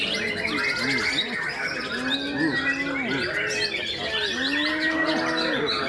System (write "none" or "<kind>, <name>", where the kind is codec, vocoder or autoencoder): none